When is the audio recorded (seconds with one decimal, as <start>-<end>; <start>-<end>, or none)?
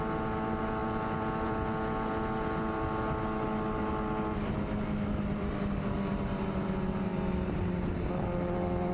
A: 0.0-8.9